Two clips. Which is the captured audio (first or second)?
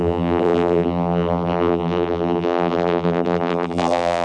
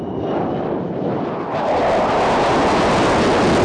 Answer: second